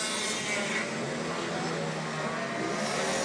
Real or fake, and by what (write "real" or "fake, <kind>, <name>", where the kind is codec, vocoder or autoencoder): real